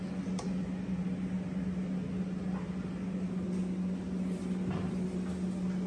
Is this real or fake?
real